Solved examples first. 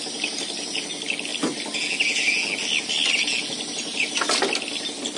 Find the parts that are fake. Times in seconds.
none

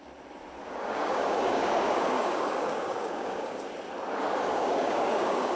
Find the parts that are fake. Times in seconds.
0.6-3.6 (codec, DAC); 4.5-5.6